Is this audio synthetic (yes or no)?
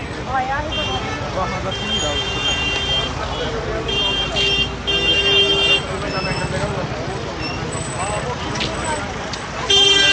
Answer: no